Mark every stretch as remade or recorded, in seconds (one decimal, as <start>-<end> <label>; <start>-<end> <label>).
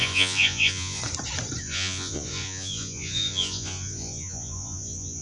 0.0-1.0 remade; 1.0-1.6 recorded; 1.6-5.2 remade